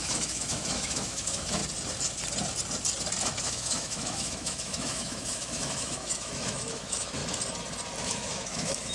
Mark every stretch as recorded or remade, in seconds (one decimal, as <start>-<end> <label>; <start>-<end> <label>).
0.0-1.6 remade; 1.6-3.4 recorded; 3.4-7.2 remade; 7.2-8.0 recorded; 8.0-8.9 remade